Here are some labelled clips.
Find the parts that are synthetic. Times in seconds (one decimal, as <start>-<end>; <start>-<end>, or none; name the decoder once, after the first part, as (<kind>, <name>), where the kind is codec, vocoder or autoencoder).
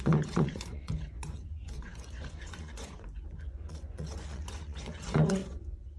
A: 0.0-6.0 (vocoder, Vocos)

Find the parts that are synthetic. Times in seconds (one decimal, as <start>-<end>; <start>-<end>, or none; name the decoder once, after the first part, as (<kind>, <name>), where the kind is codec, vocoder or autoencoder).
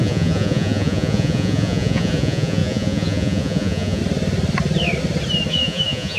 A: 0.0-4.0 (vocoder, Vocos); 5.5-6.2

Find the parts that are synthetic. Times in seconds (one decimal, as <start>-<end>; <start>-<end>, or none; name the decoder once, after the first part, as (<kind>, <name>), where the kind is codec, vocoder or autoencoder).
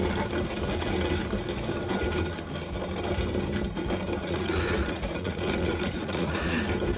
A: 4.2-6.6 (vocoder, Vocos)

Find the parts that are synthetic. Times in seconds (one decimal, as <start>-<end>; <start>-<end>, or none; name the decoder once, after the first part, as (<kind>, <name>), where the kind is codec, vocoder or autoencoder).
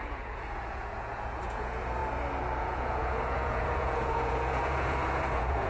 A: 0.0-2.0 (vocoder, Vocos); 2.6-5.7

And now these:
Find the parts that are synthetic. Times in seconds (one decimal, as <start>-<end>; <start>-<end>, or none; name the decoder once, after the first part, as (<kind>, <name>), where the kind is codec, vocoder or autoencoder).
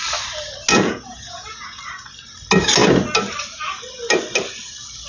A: 0.7-1.8 (vocoder, Vocos)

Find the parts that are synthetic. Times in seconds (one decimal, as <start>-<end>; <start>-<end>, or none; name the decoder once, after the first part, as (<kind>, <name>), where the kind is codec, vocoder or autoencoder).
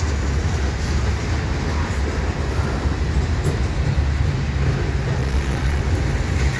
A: 5.2-5.8 (vocoder, Vocos)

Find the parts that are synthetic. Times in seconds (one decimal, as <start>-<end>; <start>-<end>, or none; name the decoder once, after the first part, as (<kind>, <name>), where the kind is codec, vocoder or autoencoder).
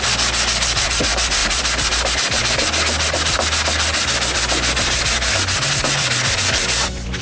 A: none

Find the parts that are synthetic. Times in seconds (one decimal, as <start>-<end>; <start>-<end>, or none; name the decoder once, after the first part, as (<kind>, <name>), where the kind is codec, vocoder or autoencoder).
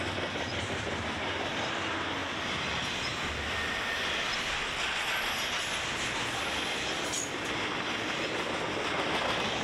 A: none